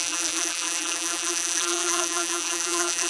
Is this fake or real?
fake